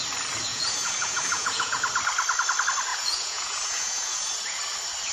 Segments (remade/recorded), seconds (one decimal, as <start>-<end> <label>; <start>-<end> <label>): 0.0-0.5 recorded; 0.5-1.8 remade; 1.8-2.9 recorded; 2.9-4.6 remade; 4.6-5.1 recorded